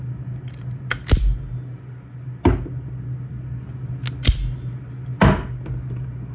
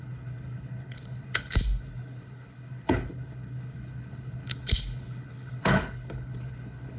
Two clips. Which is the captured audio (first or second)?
first